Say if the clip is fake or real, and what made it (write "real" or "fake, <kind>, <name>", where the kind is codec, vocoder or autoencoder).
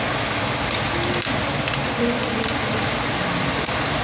real